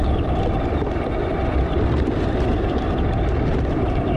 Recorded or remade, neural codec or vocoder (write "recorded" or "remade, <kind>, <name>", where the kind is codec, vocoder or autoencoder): recorded